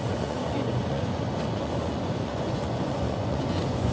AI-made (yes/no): yes